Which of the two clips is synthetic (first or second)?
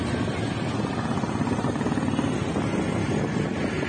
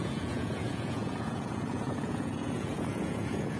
second